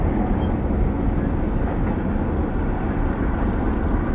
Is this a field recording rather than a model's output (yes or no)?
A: yes